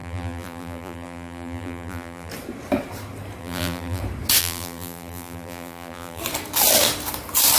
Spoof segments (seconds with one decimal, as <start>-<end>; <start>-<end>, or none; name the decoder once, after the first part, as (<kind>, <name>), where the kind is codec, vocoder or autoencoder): 0.0-2.3 (vocoder, BigVGAN v2); 3.4-4.0; 4.4-6.2